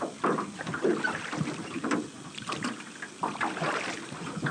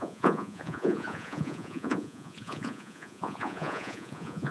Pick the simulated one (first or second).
second